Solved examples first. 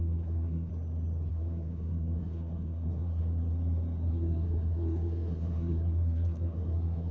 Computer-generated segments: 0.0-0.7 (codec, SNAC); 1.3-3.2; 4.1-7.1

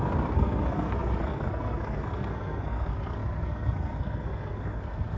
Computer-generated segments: 0.0-5.2 (codec, SNAC)